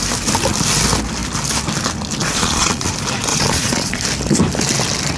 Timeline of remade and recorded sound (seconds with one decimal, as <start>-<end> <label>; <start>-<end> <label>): 0.0-2.2 recorded; 2.2-2.9 remade; 2.9-3.3 recorded; 3.3-4.0 remade; 4.0-5.2 recorded